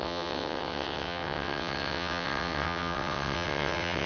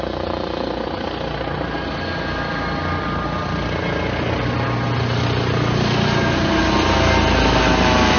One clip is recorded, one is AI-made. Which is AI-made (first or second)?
first